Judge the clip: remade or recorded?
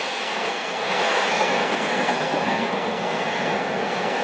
remade